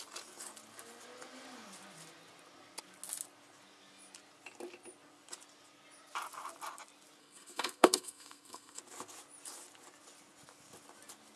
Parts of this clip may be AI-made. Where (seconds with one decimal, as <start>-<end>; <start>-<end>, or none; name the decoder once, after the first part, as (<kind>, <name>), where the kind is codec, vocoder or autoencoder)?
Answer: 7.2-8.8 (codec, SNAC)